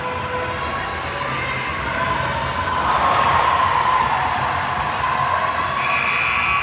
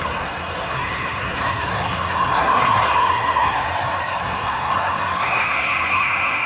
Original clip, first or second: first